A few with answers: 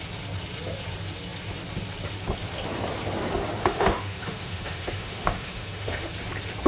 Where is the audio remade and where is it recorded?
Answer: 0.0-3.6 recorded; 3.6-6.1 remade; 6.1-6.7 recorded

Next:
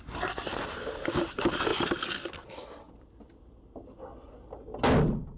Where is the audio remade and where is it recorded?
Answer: 0.0-5.4 recorded